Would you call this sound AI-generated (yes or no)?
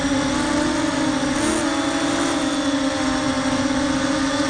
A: no